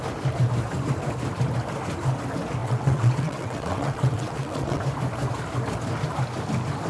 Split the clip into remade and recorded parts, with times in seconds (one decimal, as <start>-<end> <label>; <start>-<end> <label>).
0.0-2.6 recorded; 2.6-4.8 remade; 4.8-6.9 recorded